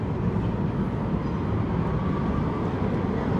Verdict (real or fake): real